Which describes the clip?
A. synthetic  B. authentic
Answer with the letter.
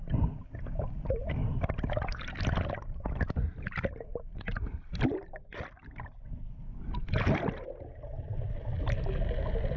B